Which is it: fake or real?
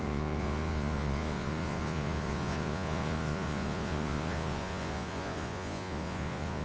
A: fake